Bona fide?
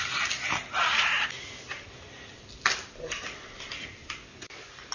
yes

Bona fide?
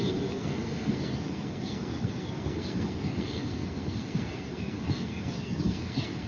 no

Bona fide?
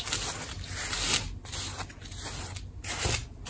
yes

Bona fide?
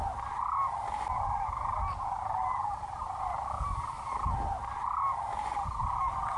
yes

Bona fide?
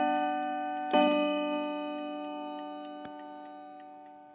yes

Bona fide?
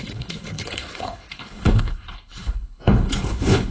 no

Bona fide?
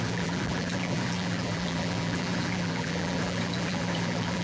no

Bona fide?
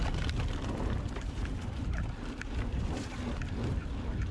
yes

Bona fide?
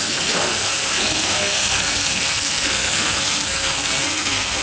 no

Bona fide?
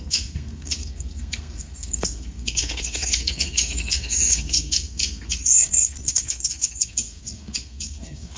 no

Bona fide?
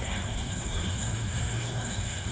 no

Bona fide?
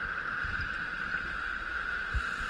yes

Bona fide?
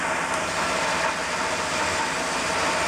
yes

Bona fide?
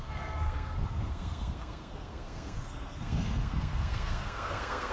no